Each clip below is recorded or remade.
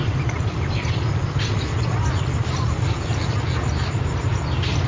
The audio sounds recorded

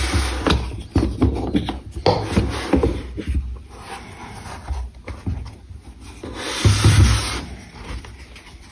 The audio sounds recorded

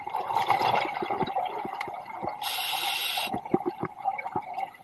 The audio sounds remade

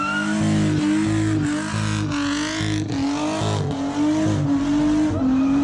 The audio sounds recorded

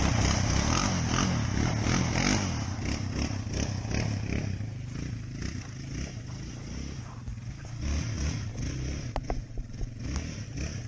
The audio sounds recorded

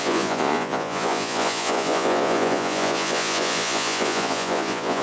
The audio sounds remade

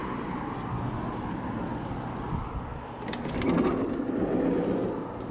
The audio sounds recorded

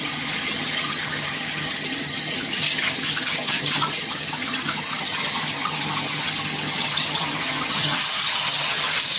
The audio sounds remade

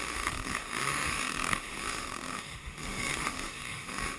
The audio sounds remade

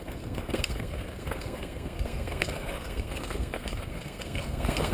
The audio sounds remade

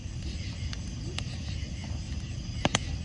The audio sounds recorded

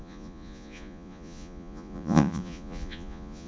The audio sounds remade